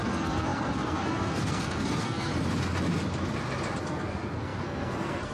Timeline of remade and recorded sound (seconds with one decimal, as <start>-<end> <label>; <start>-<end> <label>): 0.0-2.3 remade; 2.3-3.8 recorded; 3.8-5.3 remade

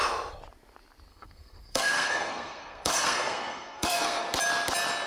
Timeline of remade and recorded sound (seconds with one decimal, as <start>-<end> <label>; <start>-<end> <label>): 0.0-1.1 recorded; 1.1-4.2 remade; 4.2-5.1 recorded

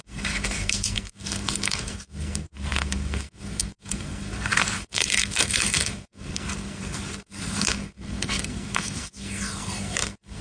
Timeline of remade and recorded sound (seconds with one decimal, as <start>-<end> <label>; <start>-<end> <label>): 0.0-10.4 remade

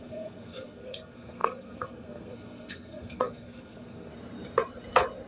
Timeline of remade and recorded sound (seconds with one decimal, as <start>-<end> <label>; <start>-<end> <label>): 0.0-4.1 remade; 4.1-5.3 recorded

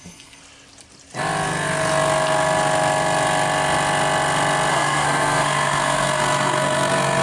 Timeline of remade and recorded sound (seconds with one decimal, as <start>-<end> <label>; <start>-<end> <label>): 0.0-0.4 remade; 0.4-4.7 recorded; 4.7-7.2 remade

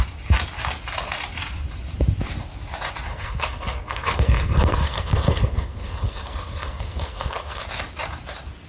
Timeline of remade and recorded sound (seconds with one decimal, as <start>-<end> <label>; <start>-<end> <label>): 0.0-3.1 recorded; 3.1-7.6 remade; 7.6-8.7 recorded